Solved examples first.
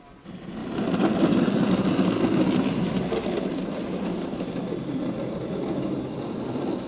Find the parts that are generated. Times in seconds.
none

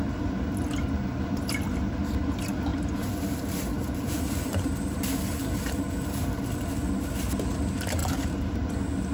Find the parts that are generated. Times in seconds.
2.7-6.4 (vocoder, BigVGAN v2); 8.0-8.7

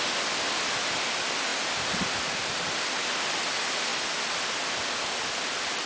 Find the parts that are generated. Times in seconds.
1.5-3.4 (vocoder, BigVGAN v2)

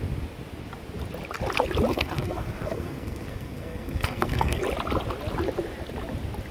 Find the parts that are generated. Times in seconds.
1.9-4.6 (codec, SNAC)

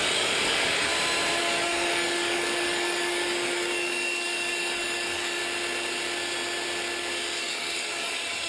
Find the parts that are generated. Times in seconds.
0.0-0.9 (codec, DAC); 1.4-5.4; 7.4-8.5

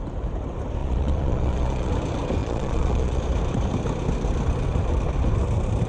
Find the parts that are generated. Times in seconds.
0.8-1.9 (vocoder, Vocos); 2.4-3.2